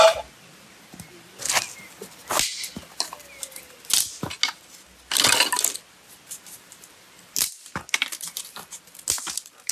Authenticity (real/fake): real